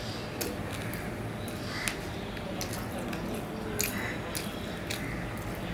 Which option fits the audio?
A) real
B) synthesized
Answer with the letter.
A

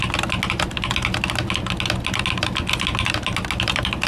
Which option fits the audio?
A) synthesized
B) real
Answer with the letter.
B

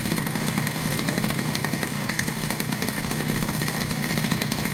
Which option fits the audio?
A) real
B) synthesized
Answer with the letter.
B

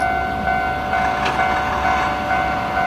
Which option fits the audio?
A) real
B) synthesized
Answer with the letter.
A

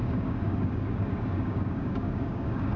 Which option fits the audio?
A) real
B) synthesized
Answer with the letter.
B